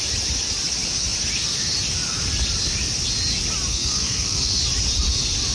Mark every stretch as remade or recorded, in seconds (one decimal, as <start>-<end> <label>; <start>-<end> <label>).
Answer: 0.0-3.7 recorded; 3.7-4.6 remade; 4.6-5.5 recorded